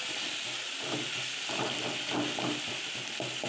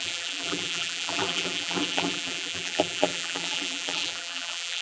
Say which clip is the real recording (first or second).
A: first